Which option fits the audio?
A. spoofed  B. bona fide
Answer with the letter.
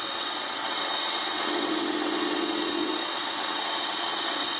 A